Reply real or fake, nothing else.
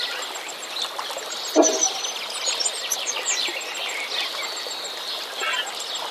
real